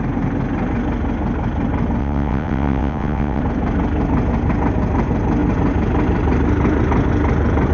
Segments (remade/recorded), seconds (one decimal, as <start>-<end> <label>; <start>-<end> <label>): 0.0-2.0 recorded; 2.0-3.4 remade; 3.4-7.7 recorded